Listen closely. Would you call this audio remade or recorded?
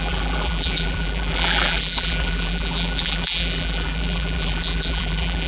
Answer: remade